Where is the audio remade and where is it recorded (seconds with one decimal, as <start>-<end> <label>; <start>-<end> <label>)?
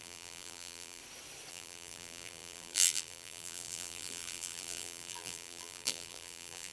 0.0-1.0 remade; 1.0-1.5 recorded; 1.5-6.7 remade